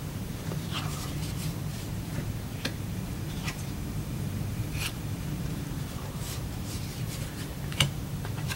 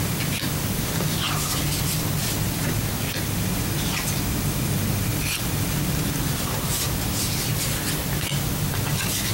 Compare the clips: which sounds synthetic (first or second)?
first